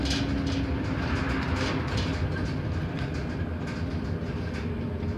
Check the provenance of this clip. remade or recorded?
recorded